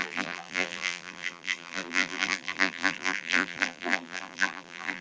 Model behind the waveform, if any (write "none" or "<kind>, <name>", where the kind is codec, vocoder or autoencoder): vocoder, BigVGAN v2